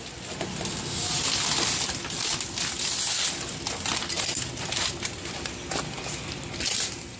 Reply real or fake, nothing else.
real